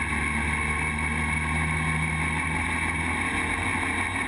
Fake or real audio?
real